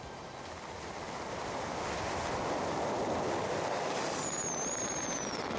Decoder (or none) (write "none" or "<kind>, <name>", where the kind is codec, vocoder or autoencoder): none